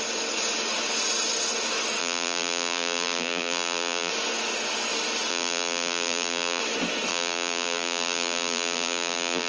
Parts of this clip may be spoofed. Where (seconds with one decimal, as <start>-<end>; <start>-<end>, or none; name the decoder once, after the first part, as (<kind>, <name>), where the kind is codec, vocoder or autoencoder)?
2.0-4.1 (vocoder, BigVGAN v2); 5.3-6.6; 7.1-9.5